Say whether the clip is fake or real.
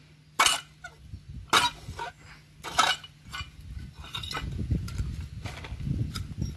real